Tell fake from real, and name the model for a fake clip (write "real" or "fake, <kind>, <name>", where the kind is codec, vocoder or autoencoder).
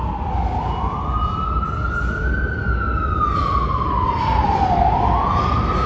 real